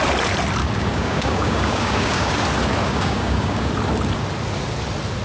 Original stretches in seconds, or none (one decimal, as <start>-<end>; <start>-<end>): 0.0-0.6; 2.3-2.8; 3.7-5.2